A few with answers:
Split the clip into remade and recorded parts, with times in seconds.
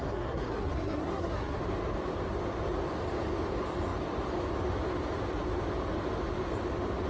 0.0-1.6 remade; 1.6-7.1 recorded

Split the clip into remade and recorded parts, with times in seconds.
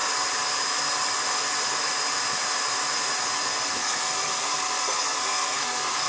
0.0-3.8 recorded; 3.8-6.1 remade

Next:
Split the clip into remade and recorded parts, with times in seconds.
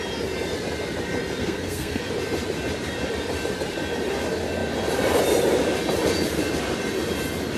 0.0-1.4 recorded; 1.4-2.0 remade; 2.0-7.6 recorded